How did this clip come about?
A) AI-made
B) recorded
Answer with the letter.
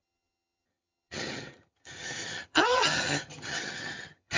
A